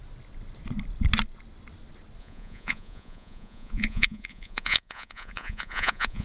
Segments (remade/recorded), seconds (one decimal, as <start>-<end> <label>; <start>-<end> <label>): 0.0-2.2 recorded; 2.2-6.2 remade